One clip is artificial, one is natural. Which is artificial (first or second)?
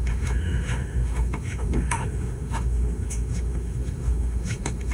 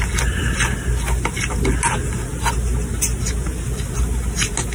first